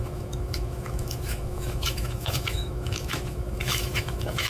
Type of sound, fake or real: fake